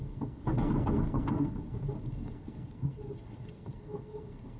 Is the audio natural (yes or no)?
no